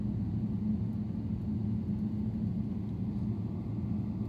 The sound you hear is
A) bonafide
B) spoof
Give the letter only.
A